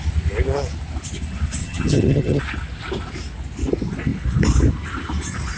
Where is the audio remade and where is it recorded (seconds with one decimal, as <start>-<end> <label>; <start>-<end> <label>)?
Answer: 0.0-1.6 recorded; 1.6-2.4 remade; 2.4-5.6 recorded